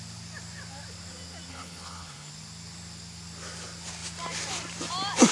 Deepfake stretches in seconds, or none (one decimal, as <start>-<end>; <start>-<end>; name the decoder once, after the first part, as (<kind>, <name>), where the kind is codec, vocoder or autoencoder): 1.5-2.3 (codec, HILCodec)